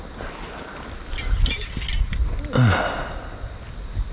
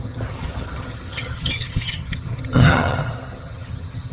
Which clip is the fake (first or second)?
second